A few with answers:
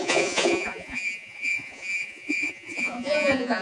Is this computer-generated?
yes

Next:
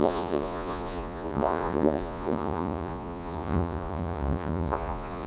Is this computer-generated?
yes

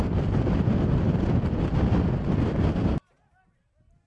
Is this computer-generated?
no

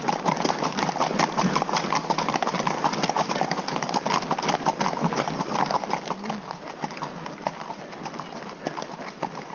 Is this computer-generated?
no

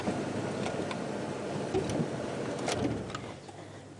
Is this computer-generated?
no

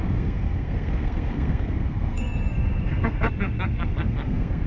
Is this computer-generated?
yes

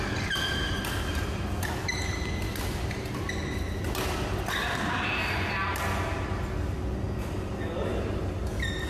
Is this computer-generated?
no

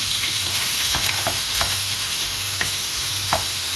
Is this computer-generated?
yes